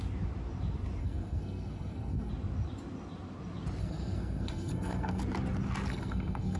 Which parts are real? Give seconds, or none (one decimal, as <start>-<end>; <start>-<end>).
0.0-1.0; 2.3-3.8; 5.2-5.9